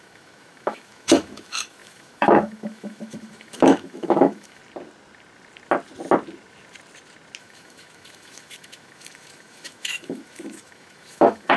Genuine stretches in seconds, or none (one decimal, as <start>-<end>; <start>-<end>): 4.6-7.4